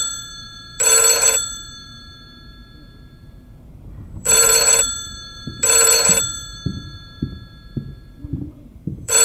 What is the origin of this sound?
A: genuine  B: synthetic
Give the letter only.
B